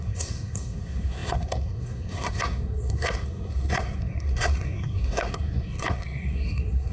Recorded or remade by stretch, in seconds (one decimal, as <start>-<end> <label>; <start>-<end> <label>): 0.0-6.9 remade

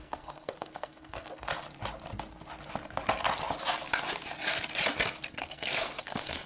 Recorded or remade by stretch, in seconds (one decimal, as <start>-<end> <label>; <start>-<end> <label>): 0.0-1.5 remade; 1.5-5.4 recorded; 5.4-6.5 remade

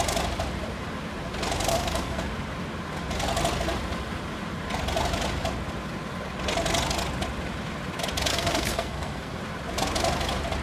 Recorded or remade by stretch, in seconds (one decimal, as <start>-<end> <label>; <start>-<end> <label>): 0.0-1.7 recorded; 1.7-2.3 remade; 2.3-8.3 recorded; 8.3-9.4 remade; 9.4-10.6 recorded

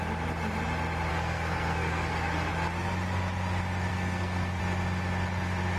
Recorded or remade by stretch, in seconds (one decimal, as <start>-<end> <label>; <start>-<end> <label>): 0.0-1.1 recorded; 1.1-2.5 remade; 2.5-3.9 recorded; 3.9-4.6 remade; 4.6-5.8 recorded

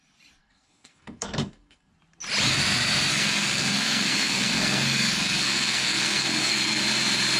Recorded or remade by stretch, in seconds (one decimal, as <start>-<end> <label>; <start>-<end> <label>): 0.0-0.4 recorded; 0.4-1.9 remade; 1.9-3.1 recorded; 3.1-6.8 remade; 6.8-7.4 recorded